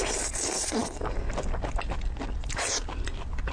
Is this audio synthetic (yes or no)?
no